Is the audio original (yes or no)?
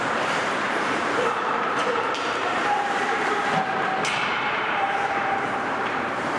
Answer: no